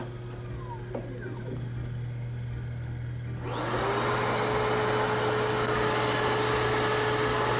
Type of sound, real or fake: real